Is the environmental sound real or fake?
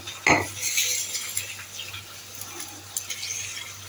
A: real